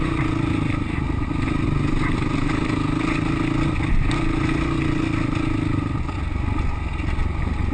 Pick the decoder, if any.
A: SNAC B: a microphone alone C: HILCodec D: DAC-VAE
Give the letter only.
B